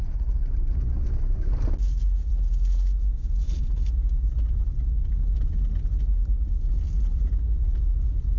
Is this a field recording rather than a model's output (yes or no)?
yes